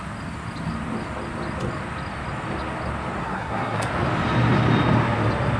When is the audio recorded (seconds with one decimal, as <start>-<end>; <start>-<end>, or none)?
0.0-3.2; 3.9-5.6